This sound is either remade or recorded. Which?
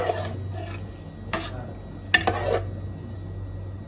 recorded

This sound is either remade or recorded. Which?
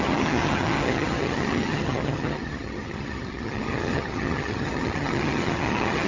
remade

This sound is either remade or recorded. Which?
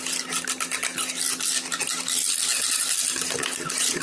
recorded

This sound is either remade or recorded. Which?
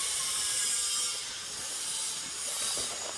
remade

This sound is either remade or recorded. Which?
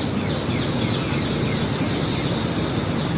recorded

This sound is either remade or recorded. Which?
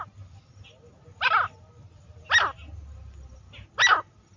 recorded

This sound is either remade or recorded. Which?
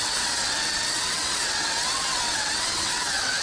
remade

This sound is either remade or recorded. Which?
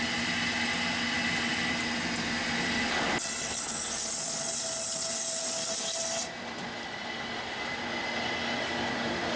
recorded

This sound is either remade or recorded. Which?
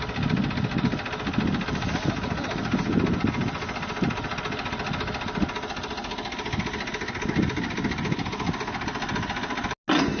recorded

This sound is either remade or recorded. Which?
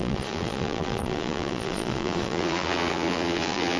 remade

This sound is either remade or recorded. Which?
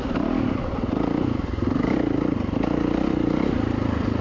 recorded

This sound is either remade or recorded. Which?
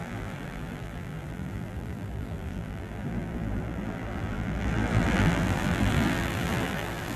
remade